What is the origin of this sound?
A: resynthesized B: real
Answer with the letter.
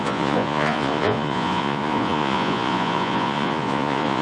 A